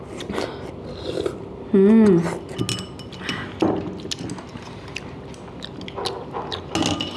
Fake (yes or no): no